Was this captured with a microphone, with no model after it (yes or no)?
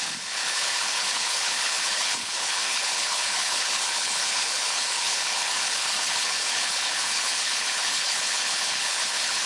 no